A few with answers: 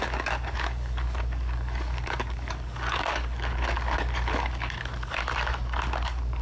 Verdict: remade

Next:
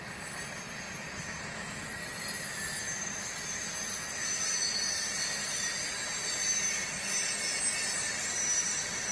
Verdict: recorded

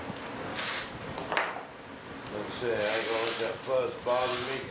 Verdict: recorded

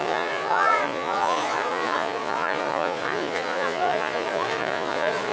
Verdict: remade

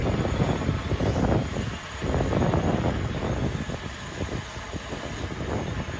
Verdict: recorded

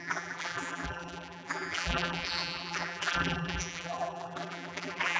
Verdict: remade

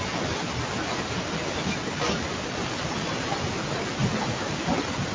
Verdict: recorded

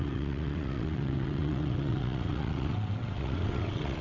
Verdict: remade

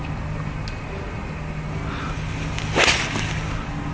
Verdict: recorded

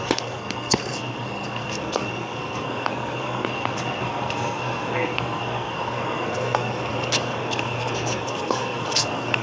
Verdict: remade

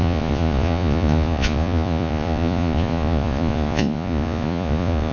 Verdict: remade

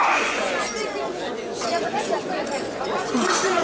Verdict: remade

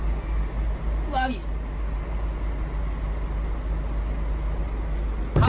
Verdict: recorded